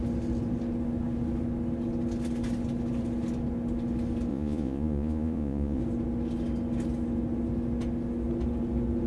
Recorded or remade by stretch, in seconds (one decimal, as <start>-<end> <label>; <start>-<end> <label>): 0.0-4.3 recorded; 4.3-5.8 remade; 5.8-9.1 recorded